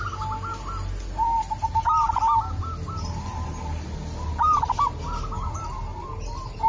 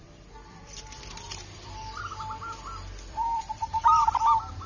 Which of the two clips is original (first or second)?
first